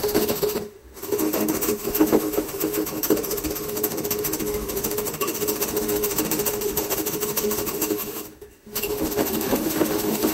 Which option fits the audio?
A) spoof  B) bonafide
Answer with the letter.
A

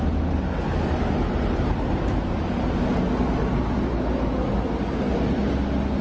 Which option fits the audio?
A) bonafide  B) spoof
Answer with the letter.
A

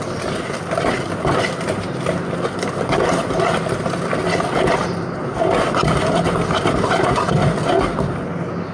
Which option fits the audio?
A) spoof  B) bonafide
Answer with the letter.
B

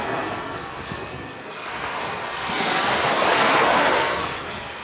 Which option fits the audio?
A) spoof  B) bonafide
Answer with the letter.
A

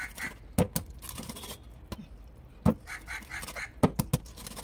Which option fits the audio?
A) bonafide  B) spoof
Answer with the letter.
A